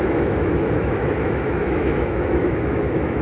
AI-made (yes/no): yes